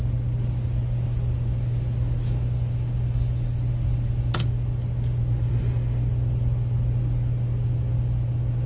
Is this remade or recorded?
recorded